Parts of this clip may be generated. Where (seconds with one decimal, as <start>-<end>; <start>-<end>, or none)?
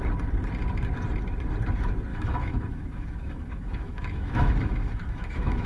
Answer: 2.1-5.7